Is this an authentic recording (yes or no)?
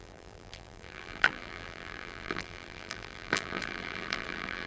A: no